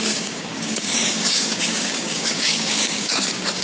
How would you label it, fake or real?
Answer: fake